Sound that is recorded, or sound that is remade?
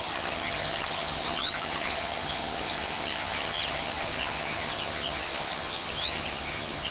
remade